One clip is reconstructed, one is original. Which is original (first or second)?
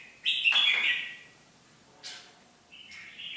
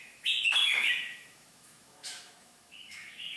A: first